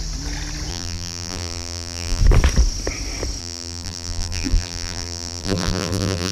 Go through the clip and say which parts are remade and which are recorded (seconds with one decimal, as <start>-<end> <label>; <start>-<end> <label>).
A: 0.0-0.7 recorded; 0.7-2.2 remade; 2.2-3.4 recorded; 3.4-6.3 remade